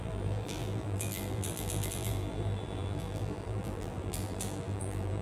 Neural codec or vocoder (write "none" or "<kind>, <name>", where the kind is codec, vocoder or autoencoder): vocoder, BigVGAN v2